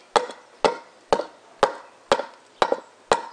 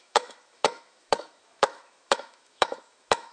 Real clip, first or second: first